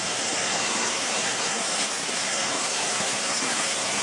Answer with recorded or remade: remade